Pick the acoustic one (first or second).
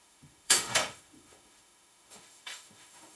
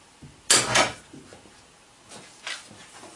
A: second